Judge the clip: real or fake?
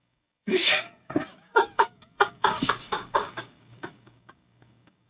fake